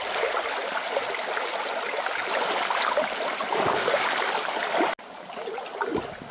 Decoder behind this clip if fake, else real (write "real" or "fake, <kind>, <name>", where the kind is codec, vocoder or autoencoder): real